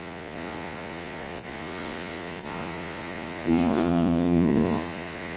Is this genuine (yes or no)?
no